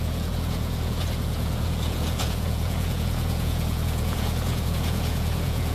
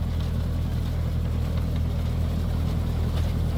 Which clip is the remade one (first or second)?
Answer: first